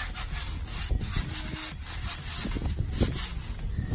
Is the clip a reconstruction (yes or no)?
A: no